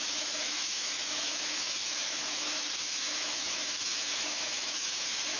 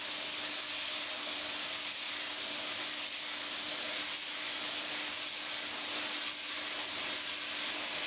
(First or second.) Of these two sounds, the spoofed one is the first